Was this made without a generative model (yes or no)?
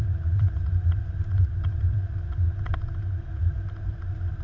no